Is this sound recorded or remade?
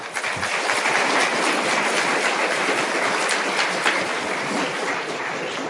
recorded